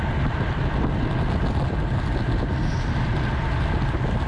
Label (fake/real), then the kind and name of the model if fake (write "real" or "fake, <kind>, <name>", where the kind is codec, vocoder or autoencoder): real